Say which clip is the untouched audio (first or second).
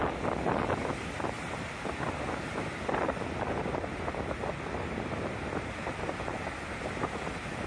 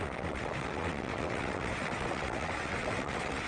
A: first